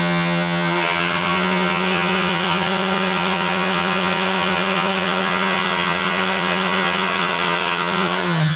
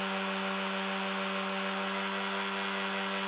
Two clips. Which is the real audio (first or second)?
second